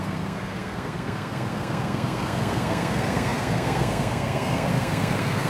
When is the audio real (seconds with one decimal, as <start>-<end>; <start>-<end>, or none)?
none